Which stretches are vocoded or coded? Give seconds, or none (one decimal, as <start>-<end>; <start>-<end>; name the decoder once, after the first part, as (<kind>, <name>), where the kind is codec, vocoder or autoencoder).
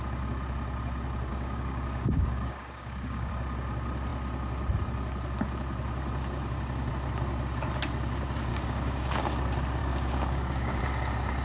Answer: 1.3-3.3 (codec, DAC); 8.5-9.3; 9.8-10.8